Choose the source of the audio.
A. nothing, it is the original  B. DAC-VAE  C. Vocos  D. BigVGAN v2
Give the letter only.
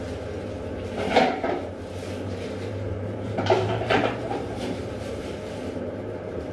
D